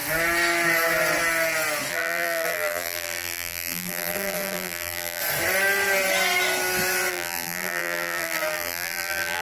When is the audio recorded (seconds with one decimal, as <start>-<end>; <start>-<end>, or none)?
0.0-1.9; 5.2-7.1